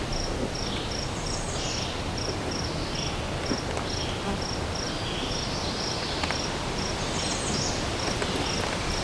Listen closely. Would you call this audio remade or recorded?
recorded